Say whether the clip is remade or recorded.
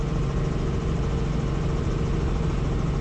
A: recorded